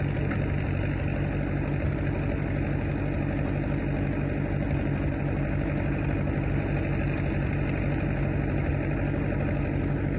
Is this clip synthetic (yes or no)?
no